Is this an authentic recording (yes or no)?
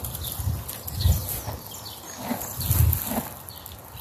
yes